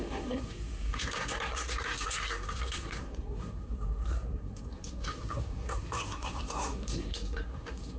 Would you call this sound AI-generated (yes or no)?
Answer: yes